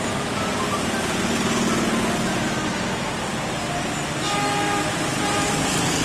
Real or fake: real